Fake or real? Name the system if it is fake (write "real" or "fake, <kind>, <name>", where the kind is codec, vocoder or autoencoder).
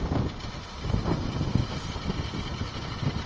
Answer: real